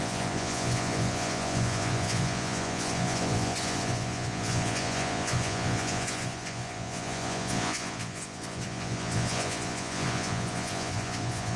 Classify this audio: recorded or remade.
remade